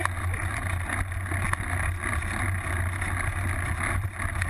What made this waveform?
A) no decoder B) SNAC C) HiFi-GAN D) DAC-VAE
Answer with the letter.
A